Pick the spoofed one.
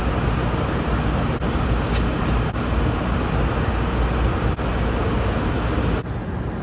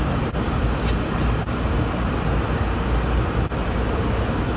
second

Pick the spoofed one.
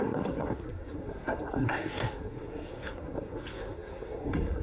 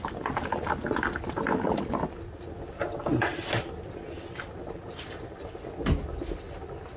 first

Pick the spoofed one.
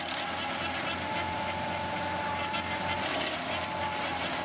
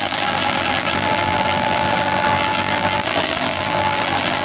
second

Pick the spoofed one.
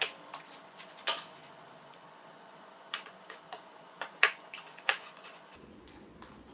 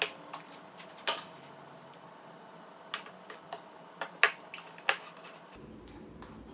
first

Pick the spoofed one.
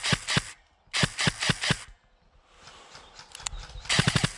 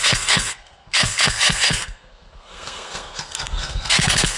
second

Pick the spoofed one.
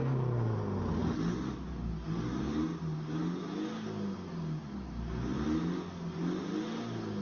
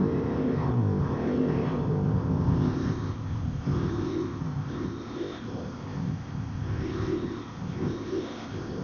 second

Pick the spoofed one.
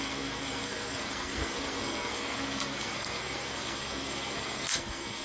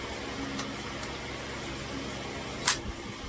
first